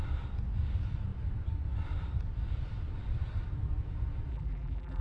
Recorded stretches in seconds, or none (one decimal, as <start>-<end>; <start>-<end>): 0.0-4.3

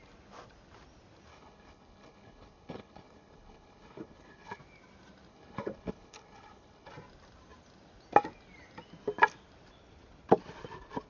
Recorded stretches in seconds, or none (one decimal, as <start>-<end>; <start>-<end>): 0.0-1.3; 4.6-5.3; 6.9-11.1

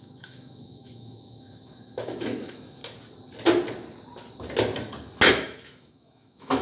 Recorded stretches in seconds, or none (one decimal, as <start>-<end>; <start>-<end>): 2.8-5.3

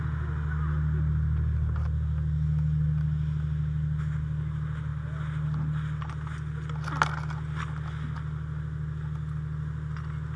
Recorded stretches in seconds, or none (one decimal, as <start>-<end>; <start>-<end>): 0.0-10.4